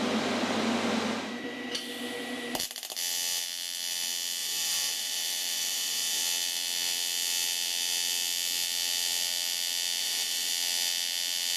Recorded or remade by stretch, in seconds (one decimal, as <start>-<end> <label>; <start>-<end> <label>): 0.0-4.4 recorded; 4.4-6.2 remade; 6.2-10.0 recorded; 10.0-10.5 remade; 10.5-11.6 recorded